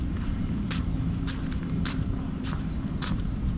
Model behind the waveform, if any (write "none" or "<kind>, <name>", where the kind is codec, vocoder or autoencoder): vocoder, BigVGAN v2